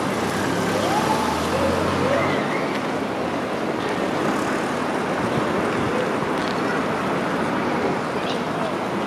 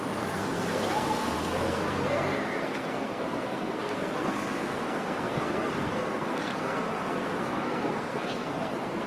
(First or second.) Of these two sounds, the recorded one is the first